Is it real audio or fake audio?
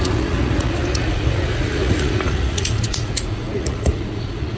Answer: fake